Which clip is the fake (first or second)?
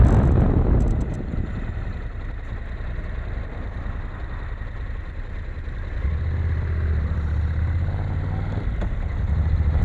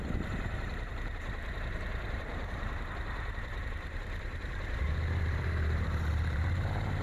second